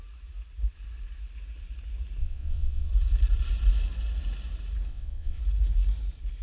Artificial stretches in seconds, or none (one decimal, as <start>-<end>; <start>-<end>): 2.2-2.9; 4.9-5.4